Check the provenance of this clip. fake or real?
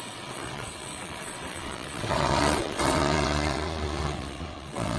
fake